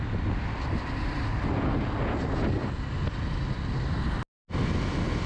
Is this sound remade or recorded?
recorded